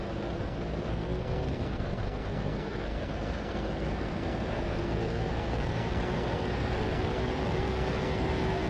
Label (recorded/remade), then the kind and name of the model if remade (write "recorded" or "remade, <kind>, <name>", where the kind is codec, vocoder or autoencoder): remade, codec, SNAC